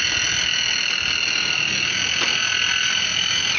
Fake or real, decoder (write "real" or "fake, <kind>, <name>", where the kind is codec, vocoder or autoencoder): real